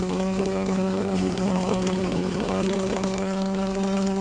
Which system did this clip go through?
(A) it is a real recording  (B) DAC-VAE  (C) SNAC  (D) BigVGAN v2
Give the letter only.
C